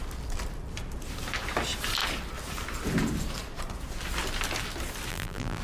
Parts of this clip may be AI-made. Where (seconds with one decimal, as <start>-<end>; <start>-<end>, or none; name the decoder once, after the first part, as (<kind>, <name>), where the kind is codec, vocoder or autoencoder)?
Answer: 5.1-5.6 (vocoder, BigVGAN v2)